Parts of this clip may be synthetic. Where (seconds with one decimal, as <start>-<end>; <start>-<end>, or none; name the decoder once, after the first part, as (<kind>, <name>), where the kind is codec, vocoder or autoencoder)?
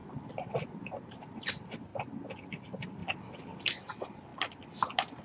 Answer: 0.0-1.5 (vocoder, BigVGAN v2)